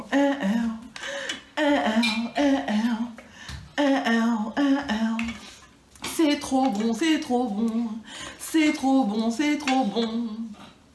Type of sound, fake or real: real